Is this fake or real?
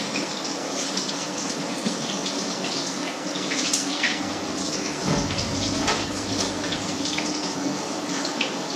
fake